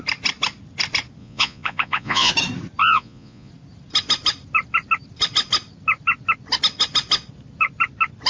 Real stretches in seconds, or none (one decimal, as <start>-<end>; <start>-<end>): 0.0-1.2; 2.3-2.8; 3.5-8.3